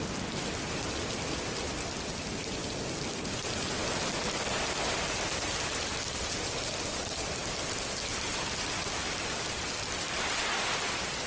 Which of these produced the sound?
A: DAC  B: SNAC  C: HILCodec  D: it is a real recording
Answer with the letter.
D